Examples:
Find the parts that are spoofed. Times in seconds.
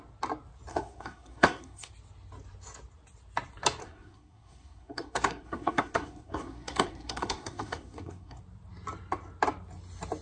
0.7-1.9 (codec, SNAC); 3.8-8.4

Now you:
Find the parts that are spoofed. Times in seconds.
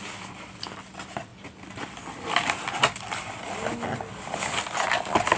none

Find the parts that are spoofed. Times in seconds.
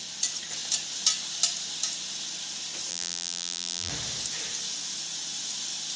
2.9-3.9 (vocoder, BigVGAN v2)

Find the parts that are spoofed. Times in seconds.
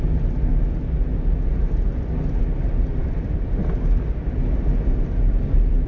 3.0-5.9 (vocoder, BigVGAN v2)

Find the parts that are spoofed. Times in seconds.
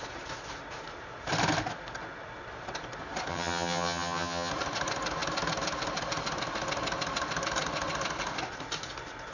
3.3-4.5 (vocoder, HiFi-GAN)